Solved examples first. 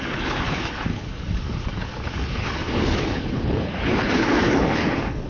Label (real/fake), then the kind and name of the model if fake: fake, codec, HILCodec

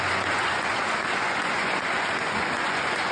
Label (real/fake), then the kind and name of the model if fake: fake, vocoder, Vocos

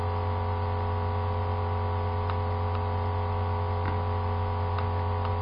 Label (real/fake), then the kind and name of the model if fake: real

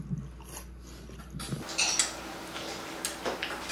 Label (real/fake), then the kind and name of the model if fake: real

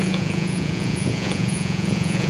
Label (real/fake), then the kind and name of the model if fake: fake, vocoder, Vocos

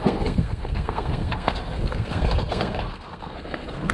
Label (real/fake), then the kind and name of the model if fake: fake, codec, SNAC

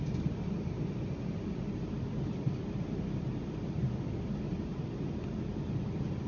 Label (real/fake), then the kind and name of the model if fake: real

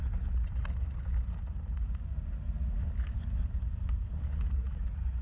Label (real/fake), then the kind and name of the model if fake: real